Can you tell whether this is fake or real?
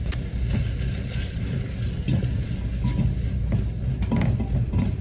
real